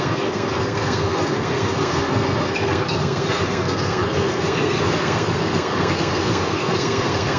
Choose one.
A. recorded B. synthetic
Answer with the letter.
B